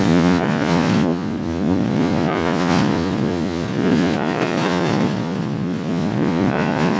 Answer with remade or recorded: remade